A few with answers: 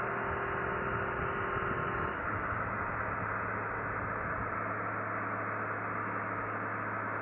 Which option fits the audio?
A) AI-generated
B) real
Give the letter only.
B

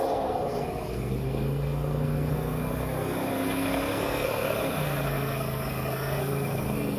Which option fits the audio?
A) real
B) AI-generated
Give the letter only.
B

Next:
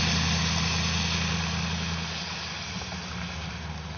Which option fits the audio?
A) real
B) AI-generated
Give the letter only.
A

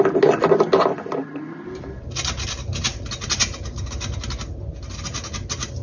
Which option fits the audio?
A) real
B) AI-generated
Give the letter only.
A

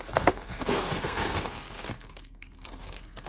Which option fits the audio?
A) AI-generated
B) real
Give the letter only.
A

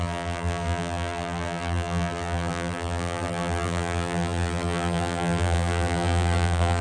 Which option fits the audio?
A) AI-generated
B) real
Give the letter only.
A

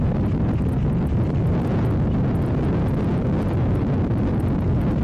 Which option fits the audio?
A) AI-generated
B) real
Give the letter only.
B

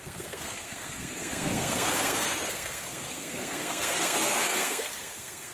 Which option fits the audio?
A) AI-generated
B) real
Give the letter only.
A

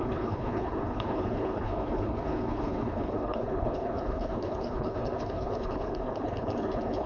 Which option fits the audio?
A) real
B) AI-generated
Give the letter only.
B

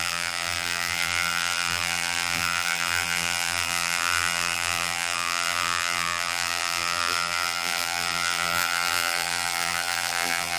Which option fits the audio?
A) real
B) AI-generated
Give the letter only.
B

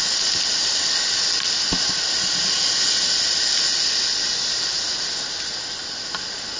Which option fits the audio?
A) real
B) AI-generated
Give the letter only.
A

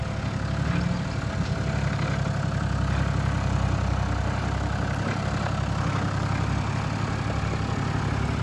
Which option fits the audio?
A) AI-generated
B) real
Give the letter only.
B